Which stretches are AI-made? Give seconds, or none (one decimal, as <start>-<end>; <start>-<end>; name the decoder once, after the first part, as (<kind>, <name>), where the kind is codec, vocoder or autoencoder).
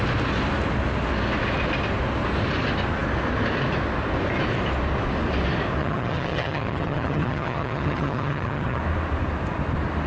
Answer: 5.8-8.8 (vocoder, HiFi-GAN)